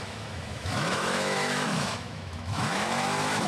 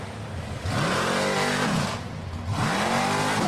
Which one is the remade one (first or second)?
first